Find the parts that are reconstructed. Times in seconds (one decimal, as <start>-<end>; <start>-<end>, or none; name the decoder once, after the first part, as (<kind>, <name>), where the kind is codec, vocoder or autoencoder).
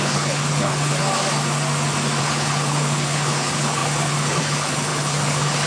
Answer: 0.0-1.0 (codec, HILCodec); 2.2-5.7